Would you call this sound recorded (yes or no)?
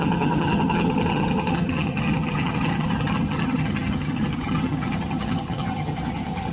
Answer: no